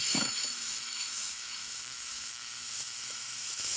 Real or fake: fake